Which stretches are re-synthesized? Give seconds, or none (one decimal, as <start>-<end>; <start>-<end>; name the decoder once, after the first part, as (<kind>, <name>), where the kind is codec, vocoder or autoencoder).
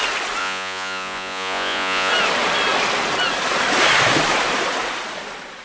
0.4-2.1 (vocoder, Vocos)